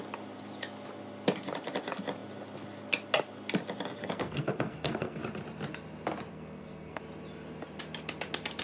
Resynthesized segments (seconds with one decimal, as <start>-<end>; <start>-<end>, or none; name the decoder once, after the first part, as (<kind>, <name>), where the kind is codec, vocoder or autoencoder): 4.0-5.2 (codec, SNAC); 6.3-7.0